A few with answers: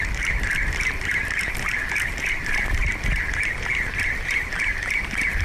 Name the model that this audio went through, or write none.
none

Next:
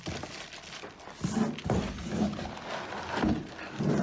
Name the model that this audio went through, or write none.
none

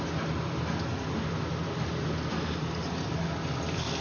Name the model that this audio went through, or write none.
none